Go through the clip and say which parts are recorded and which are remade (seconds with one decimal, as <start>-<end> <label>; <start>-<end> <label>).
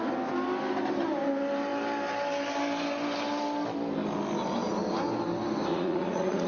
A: 0.0-5.7 recorded; 5.7-6.5 remade